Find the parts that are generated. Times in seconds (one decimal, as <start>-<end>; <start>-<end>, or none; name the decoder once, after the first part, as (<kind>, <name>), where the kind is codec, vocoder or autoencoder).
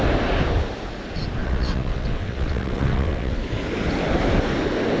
1.4-3.4 (vocoder, WaveNeXt)